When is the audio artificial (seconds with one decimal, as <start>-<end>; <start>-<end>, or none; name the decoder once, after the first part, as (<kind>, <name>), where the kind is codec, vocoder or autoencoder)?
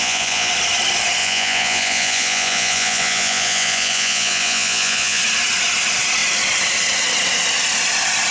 0.0-0.5 (vocoder, Vocos); 1.2-5.2